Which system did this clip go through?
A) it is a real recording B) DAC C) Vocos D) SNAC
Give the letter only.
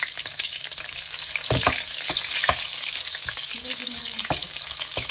B